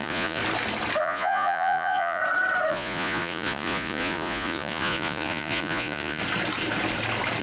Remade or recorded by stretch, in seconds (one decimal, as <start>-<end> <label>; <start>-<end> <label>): 0.0-0.4 remade; 0.4-1.0 recorded; 1.0-2.2 remade; 2.2-2.7 recorded; 2.7-6.2 remade; 6.2-7.4 recorded